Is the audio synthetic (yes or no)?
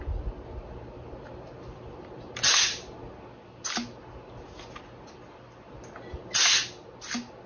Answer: no